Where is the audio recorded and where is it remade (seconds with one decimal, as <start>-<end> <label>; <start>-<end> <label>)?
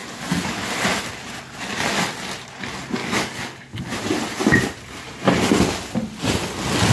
0.0-3.0 recorded; 3.0-3.8 remade; 3.8-6.9 recorded